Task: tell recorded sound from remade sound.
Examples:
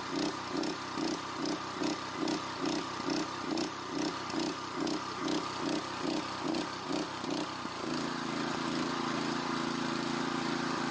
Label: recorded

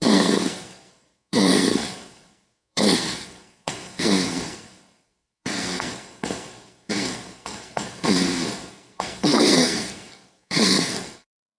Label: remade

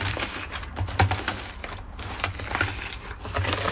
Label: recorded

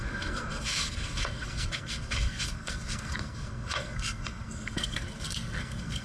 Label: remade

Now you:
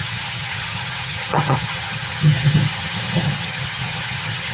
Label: remade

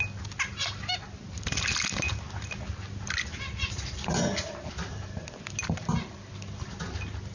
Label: recorded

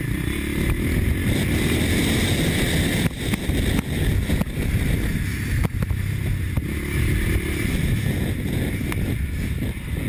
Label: recorded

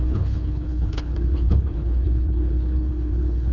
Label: remade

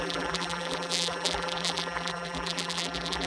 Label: remade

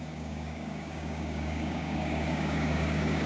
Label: remade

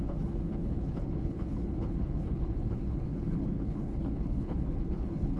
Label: remade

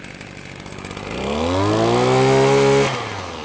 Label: recorded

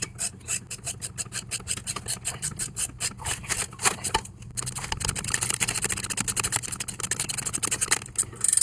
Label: recorded